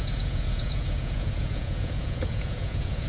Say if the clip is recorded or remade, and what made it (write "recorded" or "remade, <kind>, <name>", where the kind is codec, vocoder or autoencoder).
remade, vocoder, Vocos